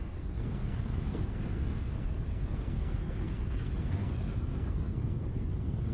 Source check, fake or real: fake